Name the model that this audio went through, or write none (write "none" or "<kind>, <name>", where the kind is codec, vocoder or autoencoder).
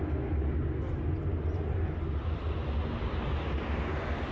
none